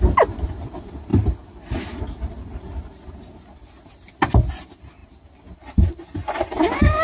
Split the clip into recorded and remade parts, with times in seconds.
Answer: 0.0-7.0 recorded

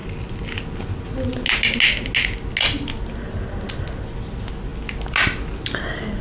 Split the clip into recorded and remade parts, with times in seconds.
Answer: 0.0-6.2 recorded

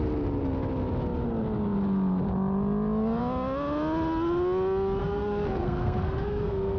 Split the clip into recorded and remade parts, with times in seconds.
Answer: 0.0-5.0 recorded; 5.0-6.8 remade

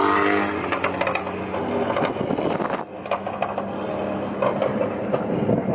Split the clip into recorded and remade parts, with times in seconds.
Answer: 0.0-4.7 recorded; 4.7-5.7 remade

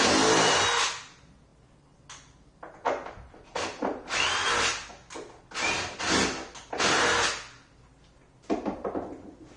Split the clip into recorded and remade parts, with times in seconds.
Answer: 0.0-9.6 recorded